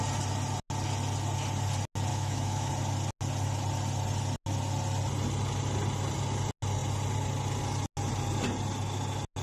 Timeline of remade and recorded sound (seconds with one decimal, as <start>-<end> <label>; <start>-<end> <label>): 0.0-2.1 recorded; 2.1-2.7 remade; 2.7-9.4 recorded